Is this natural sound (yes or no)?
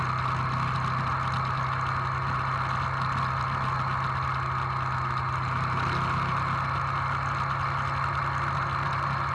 yes